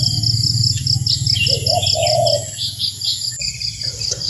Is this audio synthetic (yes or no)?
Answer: no